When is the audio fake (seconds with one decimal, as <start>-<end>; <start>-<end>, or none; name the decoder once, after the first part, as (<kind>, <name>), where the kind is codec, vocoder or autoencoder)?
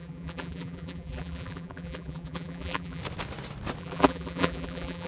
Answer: 0.0-3.0 (vocoder, BigVGAN v2); 3.8-5.1